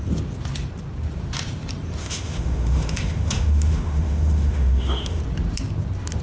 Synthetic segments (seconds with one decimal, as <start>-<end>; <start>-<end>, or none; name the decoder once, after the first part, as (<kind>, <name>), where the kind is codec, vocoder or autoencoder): 2.0-5.2 (autoencoder, DAC-VAE)